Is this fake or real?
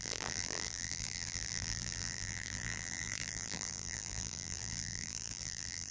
fake